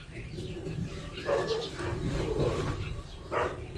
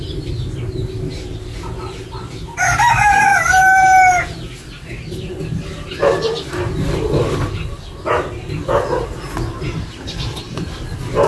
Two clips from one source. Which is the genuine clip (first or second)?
second